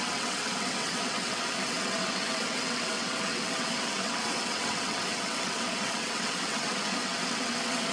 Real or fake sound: fake